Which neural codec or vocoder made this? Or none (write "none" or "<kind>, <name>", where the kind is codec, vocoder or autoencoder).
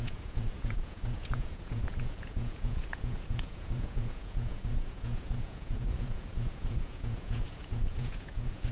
vocoder, Vocos